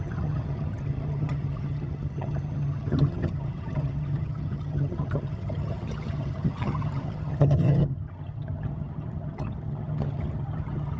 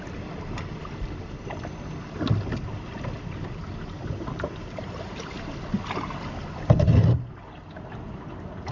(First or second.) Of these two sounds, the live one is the second